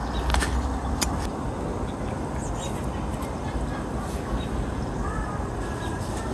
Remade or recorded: recorded